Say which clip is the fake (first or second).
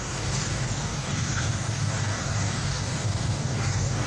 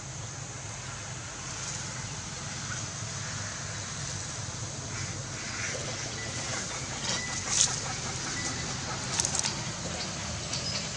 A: first